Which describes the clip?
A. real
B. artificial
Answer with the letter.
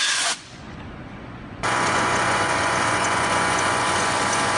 B